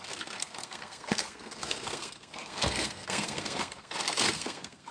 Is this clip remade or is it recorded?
remade